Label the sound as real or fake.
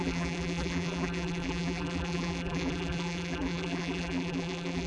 fake